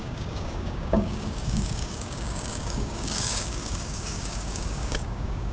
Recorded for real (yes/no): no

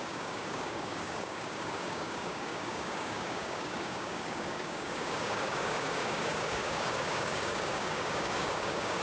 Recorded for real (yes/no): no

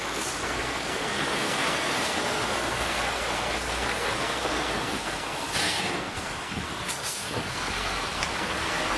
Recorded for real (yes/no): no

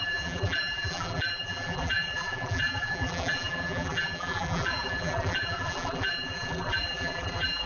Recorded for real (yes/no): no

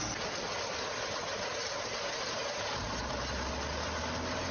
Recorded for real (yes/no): yes